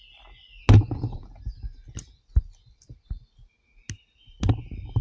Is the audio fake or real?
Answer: real